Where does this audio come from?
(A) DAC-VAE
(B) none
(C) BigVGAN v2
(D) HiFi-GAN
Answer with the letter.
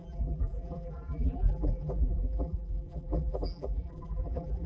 C